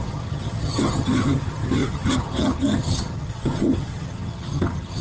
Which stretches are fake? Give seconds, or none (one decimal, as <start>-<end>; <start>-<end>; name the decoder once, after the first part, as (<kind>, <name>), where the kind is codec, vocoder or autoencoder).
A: 0.0-5.0 (vocoder, HiFi-GAN)